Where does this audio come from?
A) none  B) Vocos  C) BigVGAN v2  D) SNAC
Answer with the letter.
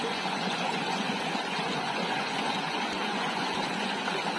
B